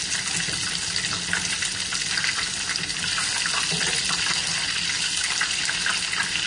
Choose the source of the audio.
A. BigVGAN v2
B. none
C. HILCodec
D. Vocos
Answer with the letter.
B